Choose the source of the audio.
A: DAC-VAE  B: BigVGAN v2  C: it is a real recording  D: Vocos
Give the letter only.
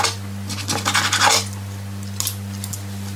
C